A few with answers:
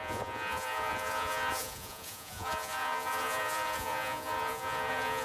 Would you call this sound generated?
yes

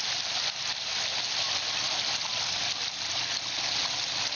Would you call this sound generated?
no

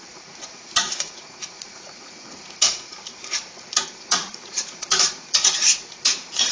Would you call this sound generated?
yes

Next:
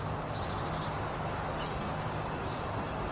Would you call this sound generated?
no